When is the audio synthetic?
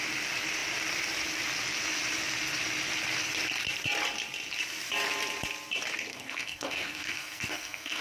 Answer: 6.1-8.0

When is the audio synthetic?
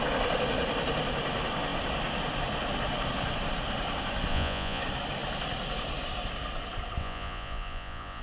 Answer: 4.3-4.8; 7.0-8.2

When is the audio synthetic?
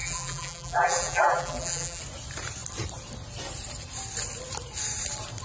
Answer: 0.0-2.0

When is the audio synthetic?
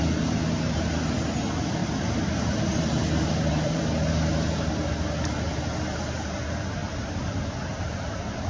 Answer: 1.8-4.1; 6.8-8.5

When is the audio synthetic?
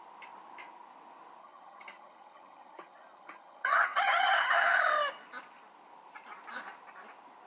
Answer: 1.4-4.8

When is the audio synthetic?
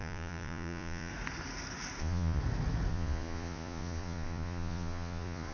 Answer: 0.0-1.1; 2.0-2.4; 2.9-5.5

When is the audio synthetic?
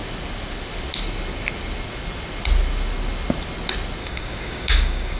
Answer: 4.0-5.2